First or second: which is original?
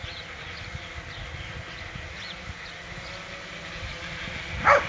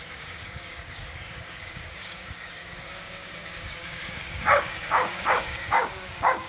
first